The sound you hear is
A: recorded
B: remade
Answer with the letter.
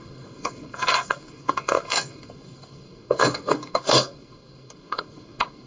B